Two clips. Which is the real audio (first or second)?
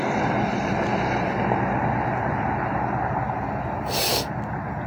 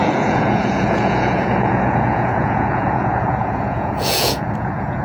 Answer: first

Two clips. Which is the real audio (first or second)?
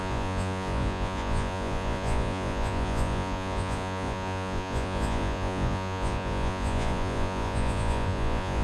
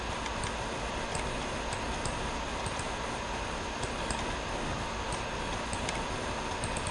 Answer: second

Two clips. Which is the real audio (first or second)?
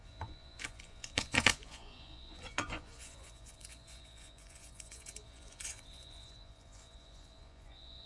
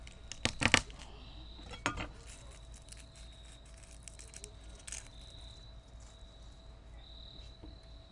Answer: second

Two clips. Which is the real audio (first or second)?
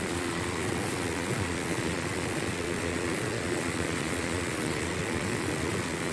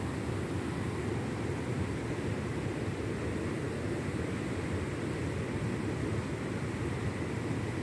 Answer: second